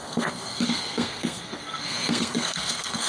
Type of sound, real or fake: fake